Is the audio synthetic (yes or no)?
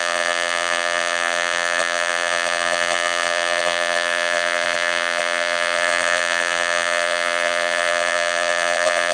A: yes